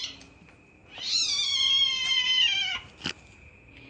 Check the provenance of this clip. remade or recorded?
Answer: recorded